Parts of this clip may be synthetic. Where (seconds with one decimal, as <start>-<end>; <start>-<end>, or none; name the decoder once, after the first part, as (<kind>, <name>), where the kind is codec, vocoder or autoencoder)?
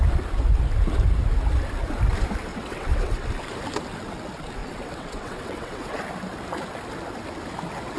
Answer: 2.5-3.3 (vocoder, WaveNeXt); 4.6-6.0